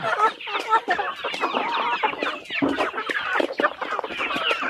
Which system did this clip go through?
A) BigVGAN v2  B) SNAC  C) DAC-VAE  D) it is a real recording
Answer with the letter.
D